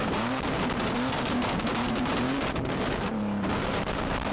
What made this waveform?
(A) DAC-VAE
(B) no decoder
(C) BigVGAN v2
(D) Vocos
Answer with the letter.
C